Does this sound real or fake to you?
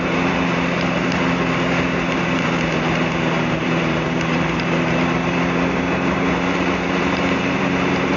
fake